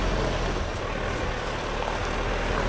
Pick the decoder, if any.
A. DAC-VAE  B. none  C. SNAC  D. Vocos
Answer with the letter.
B